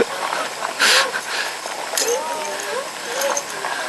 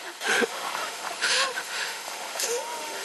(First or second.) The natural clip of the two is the first